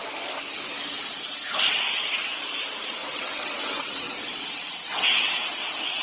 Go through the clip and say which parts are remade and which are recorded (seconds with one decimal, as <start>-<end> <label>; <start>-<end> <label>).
0.0-3.0 recorded; 3.0-5.6 remade; 5.6-6.0 recorded